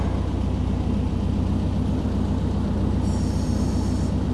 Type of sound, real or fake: real